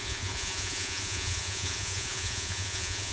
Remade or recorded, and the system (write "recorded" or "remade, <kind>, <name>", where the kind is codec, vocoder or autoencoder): remade, vocoder, Vocos